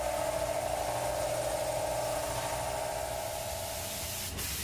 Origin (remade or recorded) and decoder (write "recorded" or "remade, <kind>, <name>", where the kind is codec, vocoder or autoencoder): recorded